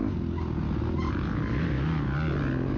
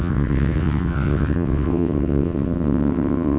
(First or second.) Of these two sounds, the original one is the first